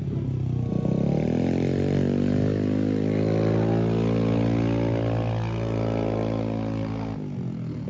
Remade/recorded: recorded